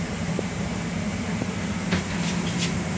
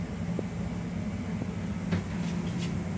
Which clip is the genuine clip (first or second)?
second